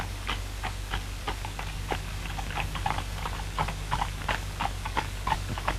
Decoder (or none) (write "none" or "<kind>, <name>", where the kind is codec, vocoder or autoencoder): codec, DAC